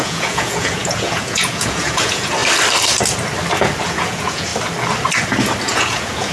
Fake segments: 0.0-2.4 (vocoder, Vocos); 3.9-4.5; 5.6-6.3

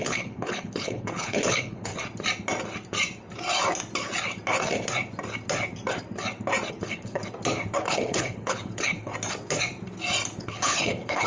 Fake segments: 0.0-1.9 (codec, HILCodec); 6.7-7.2; 7.8-9.1; 10.4-11.3

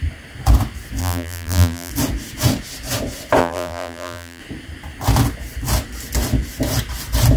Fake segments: 1.0-1.9 (vocoder, BigVGAN v2); 3.4-4.4

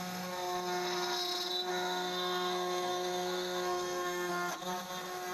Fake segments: 1.7-4.3 (codec, SNAC)

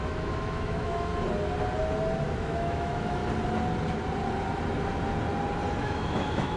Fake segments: 0.0-1.1 (autoencoder, DAC-VAE); 2.2-3.2; 5.8-6.6

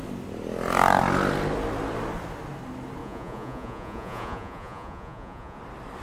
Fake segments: 3.0-5.6 (vocoder, Vocos)